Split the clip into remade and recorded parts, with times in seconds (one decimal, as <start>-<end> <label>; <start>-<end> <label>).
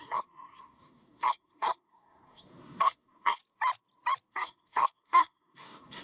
0.0-3.4 remade; 3.4-4.3 recorded; 4.3-6.0 remade